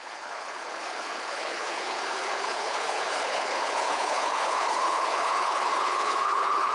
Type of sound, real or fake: fake